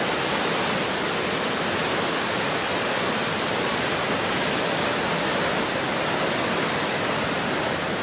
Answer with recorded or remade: recorded